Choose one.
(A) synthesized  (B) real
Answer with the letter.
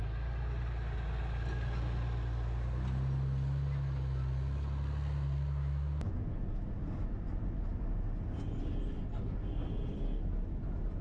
B